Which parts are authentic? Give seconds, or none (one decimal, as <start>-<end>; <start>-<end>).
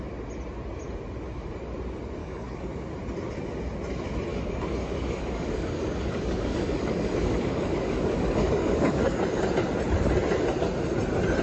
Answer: 0.0-2.2; 2.7-4.3; 9.4-11.4